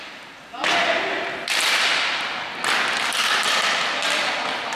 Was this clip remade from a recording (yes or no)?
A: no